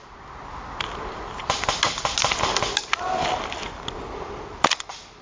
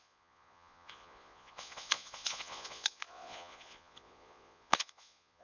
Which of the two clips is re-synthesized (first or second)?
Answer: second